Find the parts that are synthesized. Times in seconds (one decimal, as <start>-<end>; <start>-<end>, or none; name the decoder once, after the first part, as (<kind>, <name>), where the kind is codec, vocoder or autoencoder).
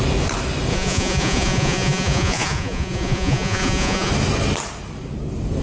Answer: 0.7-4.1 (vocoder, Vocos)